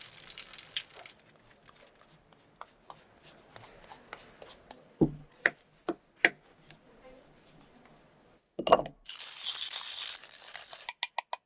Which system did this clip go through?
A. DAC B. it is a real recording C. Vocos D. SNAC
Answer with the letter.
B